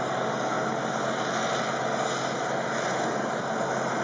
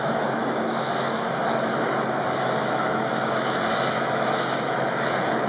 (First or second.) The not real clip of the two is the second